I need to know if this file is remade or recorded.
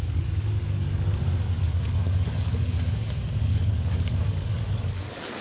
remade